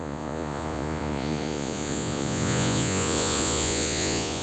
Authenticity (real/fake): fake